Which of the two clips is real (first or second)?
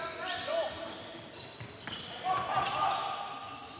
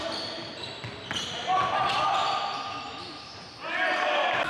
second